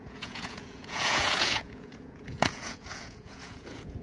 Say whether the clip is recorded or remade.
remade